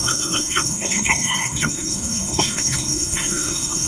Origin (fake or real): fake